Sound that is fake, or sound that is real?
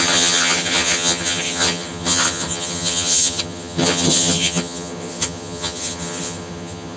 fake